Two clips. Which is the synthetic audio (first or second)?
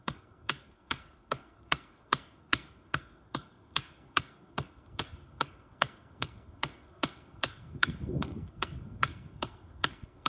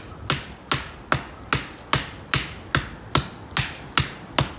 first